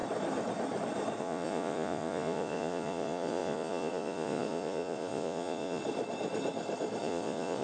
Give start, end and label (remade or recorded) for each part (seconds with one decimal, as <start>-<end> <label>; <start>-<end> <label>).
0.0-1.2 recorded; 1.2-5.8 remade; 5.8-7.0 recorded; 7.0-7.6 remade